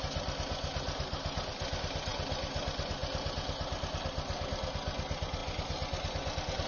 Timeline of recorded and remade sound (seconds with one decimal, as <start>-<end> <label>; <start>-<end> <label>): 0.0-6.7 recorded